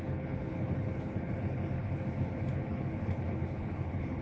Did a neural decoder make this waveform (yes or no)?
yes